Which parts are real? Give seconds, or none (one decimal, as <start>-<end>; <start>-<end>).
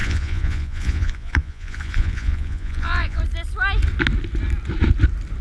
3.2-5.4